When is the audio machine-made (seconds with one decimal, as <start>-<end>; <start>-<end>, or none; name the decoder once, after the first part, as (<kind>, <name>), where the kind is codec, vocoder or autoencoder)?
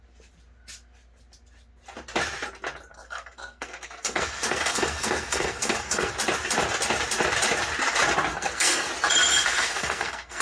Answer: 2.9-6.1 (codec, SNAC); 8.3-8.9; 9.3-10.4